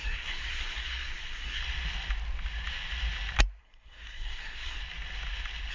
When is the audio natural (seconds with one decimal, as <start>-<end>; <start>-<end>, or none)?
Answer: 1.6-3.6; 4.8-5.7